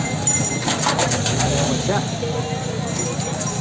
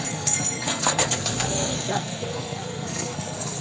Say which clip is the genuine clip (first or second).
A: first